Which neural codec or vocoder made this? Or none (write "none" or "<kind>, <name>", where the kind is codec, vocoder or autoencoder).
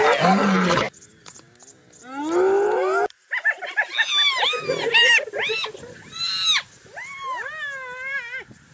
none